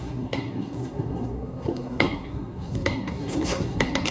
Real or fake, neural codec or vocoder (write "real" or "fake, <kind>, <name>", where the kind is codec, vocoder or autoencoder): fake, codec, SNAC